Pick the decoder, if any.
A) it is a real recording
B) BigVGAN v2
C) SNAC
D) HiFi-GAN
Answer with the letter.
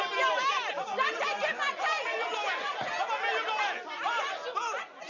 A